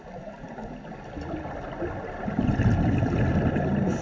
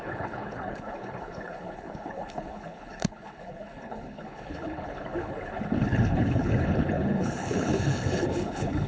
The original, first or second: first